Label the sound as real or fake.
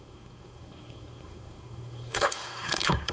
fake